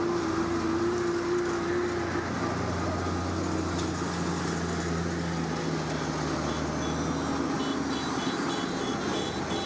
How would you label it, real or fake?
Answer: real